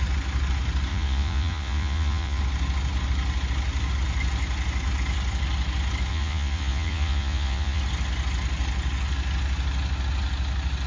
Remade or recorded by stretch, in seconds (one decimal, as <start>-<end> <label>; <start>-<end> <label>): 0.0-0.9 recorded; 0.9-2.4 remade; 2.4-6.1 recorded; 6.1-7.8 remade; 7.8-10.9 recorded